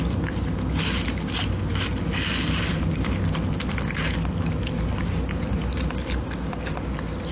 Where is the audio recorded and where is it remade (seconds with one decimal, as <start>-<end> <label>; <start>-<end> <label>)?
0.0-7.3 recorded